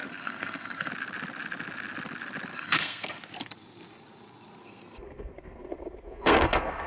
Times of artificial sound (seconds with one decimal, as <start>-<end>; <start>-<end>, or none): 0.0-0.9; 2.5-3.2; 4.6-6.9